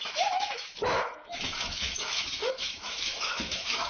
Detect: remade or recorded remade